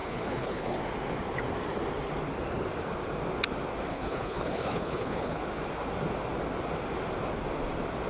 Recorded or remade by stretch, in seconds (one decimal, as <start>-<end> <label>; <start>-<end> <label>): 0.0-0.8 remade; 0.8-3.9 recorded; 3.9-5.4 remade; 5.4-8.1 recorded